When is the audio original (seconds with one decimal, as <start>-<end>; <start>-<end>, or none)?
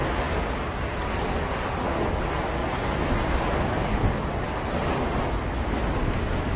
0.0-6.6